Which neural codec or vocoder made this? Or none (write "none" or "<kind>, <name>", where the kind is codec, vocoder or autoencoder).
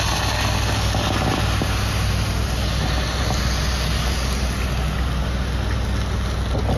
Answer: none